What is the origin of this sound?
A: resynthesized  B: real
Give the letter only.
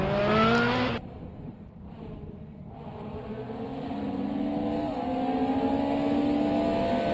B